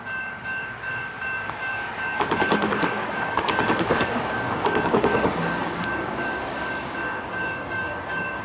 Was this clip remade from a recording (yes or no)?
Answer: yes